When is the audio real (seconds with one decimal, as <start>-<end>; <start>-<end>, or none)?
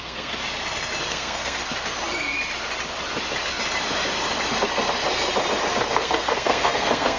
0.4-1.1; 1.6-5.9